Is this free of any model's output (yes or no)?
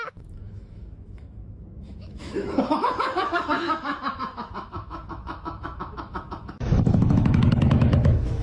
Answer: no